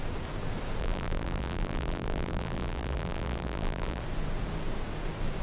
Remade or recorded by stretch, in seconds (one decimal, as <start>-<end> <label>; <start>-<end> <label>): 0.0-0.8 recorded; 0.8-4.0 remade; 4.0-5.4 recorded